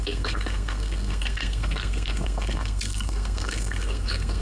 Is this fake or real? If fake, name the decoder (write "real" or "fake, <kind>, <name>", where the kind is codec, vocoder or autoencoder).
fake, codec, SNAC